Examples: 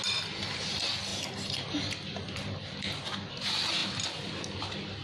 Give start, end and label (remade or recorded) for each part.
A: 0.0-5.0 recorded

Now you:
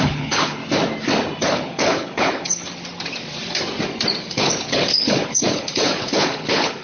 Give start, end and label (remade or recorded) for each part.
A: 0.0-0.6 remade; 0.6-1.4 recorded; 1.4-2.6 remade; 2.6-4.2 recorded; 4.2-6.8 remade

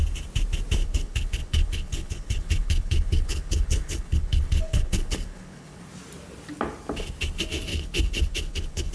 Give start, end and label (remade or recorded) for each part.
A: 0.0-0.8 recorded; 0.8-5.8 remade; 5.8-7.7 recorded; 7.7-8.9 remade

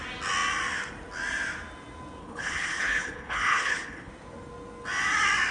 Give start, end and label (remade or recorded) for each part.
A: 0.0-2.2 recorded; 2.2-4.1 remade; 4.1-5.5 recorded

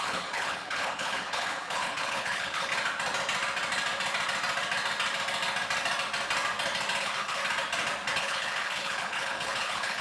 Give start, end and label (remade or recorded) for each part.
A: 0.0-2.7 remade; 2.7-7.0 recorded; 7.0-7.4 remade; 7.4-8.2 recorded; 8.2-10.0 remade

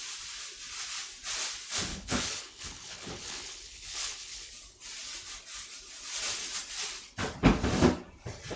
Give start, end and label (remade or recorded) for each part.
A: 0.0-1.9 recorded; 1.9-4.5 remade; 4.5-8.6 recorded